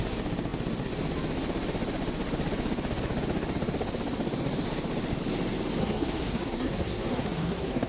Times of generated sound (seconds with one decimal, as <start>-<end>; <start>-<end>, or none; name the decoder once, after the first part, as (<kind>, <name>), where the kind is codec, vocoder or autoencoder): 5.8-7.9 (codec, SNAC)